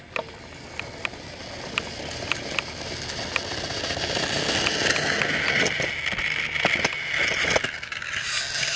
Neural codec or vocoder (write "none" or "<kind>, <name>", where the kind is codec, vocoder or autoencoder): none